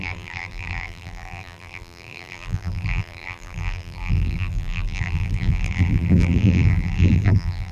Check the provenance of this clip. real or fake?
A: fake